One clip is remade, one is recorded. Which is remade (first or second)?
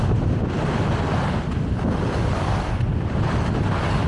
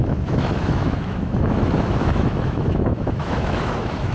second